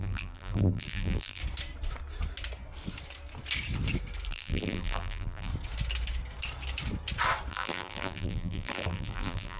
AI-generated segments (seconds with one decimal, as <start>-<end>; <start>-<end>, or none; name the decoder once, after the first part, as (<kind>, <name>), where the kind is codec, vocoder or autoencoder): 0.0-1.4 (vocoder, BigVGAN v2); 4.3-5.5; 7.5-9.6